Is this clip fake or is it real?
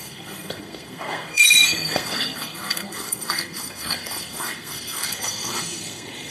fake